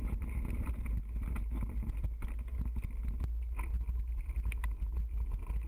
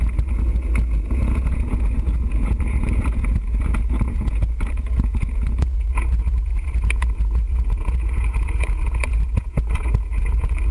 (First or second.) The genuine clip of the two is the first